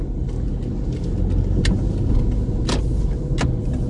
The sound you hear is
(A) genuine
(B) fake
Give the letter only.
A